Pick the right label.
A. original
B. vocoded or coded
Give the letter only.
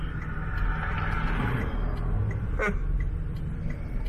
A